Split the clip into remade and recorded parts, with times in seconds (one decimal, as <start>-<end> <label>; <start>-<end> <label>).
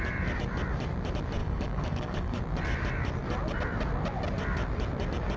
0.0-1.4 recorded; 1.4-2.4 remade; 2.4-5.4 recorded